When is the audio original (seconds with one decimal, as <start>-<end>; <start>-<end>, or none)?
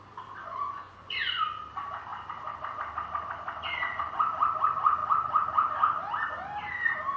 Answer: 0.0-0.4; 1.4-7.2